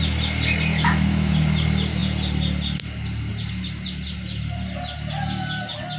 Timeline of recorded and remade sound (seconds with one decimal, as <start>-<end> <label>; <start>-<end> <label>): 0.0-0.7 recorded; 0.7-1.3 remade; 1.3-6.0 recorded